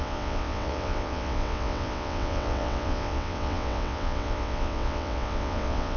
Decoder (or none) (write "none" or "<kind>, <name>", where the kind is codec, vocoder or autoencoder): vocoder, WaveNeXt